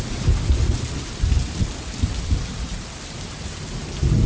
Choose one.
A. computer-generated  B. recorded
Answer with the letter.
B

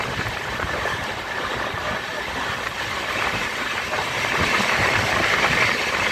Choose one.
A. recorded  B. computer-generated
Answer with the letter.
B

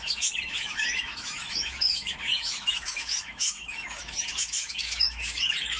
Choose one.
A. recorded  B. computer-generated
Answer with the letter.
B